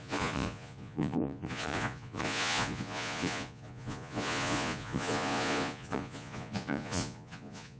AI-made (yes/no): yes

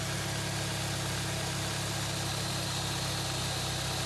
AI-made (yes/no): no